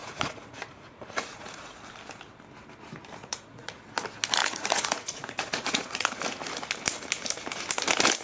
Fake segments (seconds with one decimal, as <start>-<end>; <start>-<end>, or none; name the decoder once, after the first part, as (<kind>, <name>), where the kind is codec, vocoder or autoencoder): 0.0-1.8 (vocoder, Vocos); 3.2-3.8; 4.4-6.2